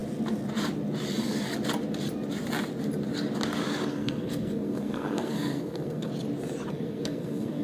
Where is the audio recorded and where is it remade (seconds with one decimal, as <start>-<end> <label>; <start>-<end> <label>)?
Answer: 0.0-3.9 recorded; 3.9-6.1 remade; 6.1-6.7 recorded; 6.7-7.6 remade